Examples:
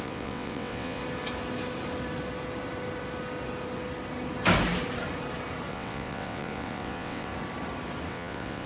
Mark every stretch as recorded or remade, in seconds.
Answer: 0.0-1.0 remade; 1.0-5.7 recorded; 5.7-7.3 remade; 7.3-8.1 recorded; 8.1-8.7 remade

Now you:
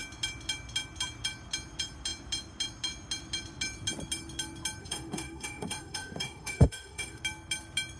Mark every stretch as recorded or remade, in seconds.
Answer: 0.0-4.8 recorded; 4.8-7.2 remade; 7.2-8.0 recorded

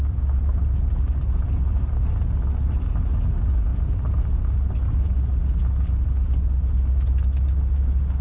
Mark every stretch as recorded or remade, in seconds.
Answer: 0.0-8.2 recorded

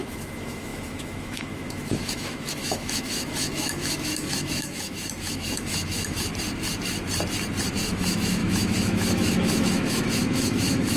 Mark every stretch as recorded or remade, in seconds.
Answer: 0.0-6.3 remade; 6.3-7.8 recorded; 7.8-11.0 remade